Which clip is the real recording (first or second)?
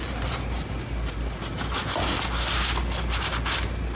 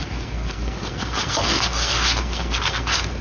first